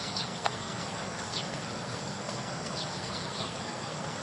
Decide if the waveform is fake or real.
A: fake